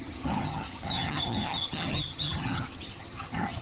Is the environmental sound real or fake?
fake